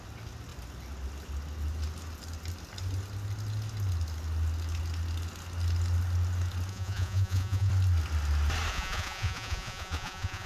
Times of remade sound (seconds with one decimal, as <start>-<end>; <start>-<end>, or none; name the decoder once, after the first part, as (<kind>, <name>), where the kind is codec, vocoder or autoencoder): 6.7-7.7 (vocoder, Vocos); 8.7-10.5